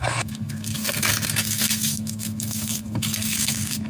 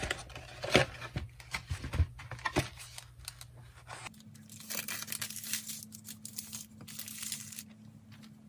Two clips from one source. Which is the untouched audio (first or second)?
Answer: second